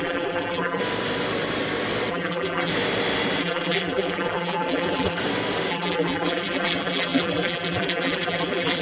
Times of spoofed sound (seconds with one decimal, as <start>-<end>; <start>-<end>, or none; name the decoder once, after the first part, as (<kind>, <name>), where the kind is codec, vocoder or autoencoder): 0.0-0.8 (vocoder, BigVGAN v2); 2.1-2.7; 3.4-5.2; 5.7-8.8